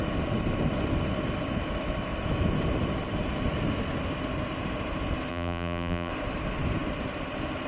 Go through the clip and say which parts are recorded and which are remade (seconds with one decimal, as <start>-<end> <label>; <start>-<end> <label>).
0.0-5.3 recorded; 5.3-6.1 remade; 6.1-7.7 recorded